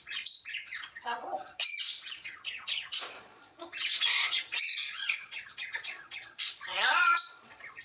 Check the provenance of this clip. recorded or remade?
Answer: remade